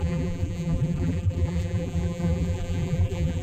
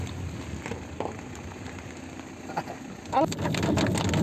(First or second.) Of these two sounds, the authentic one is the second